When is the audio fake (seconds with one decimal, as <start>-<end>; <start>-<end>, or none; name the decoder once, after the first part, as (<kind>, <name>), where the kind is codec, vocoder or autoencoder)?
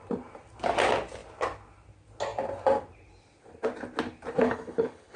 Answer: 4.4-5.2 (codec, HILCodec)